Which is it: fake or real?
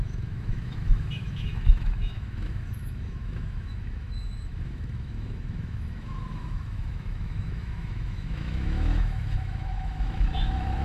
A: fake